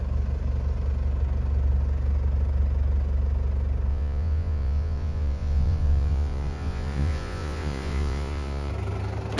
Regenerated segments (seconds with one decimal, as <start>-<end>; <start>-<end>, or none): 3.9-8.7